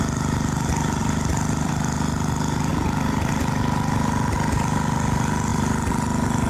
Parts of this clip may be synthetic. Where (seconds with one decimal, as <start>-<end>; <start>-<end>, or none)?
1.0-1.7; 2.7-3.3; 5.5-6.5